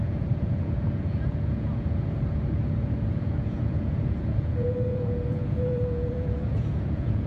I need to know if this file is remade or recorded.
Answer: remade